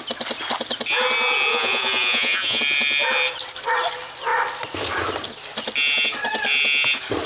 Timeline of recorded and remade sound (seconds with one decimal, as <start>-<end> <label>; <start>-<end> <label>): 0.0-1.5 recorded; 1.5-2.6 remade; 2.6-7.3 recorded